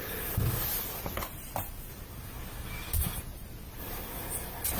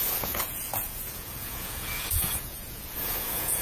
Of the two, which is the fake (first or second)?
second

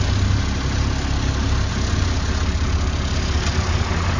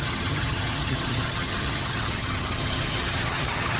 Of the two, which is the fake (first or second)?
second